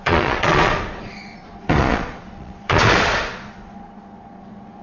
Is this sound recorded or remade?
remade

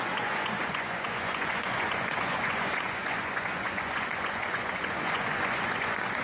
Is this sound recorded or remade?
remade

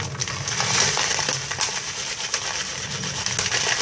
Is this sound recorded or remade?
recorded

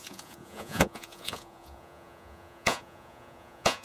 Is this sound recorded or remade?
remade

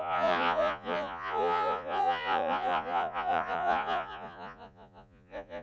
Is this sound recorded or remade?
remade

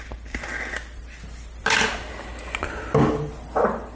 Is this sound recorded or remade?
recorded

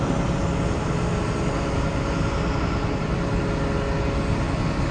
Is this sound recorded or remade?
recorded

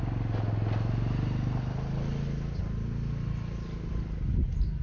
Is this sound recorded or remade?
recorded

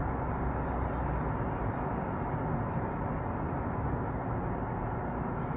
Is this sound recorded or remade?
recorded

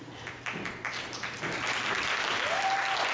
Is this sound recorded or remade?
recorded